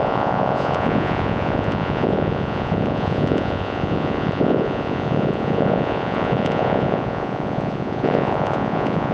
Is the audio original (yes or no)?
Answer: no